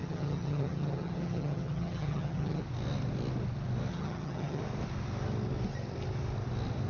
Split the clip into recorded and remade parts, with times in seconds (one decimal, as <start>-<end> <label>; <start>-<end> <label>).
0.0-2.6 remade; 2.6-3.9 recorded; 3.9-4.6 remade; 4.6-6.9 recorded